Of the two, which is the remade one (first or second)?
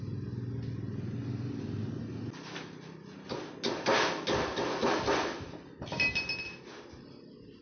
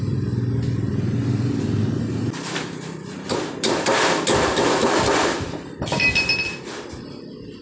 second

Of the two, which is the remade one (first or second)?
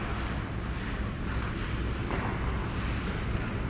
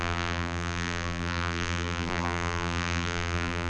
second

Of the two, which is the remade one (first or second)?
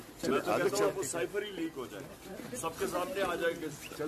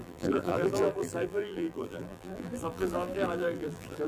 second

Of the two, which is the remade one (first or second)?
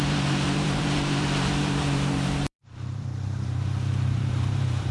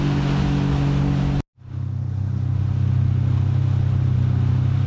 first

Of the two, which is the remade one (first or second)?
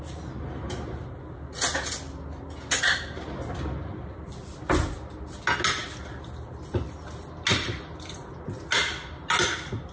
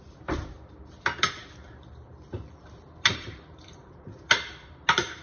second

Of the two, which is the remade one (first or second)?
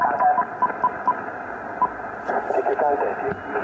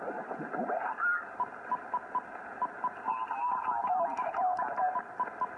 second